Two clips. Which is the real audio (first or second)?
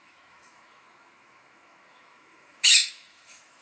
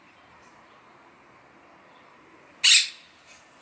second